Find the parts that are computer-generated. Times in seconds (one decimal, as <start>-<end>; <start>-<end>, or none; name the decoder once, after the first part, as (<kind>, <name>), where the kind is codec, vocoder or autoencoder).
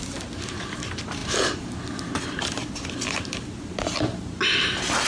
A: none